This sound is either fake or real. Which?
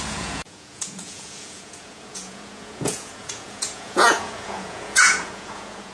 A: fake